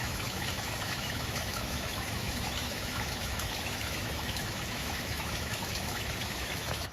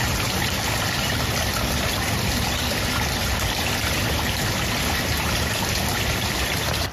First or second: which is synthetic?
first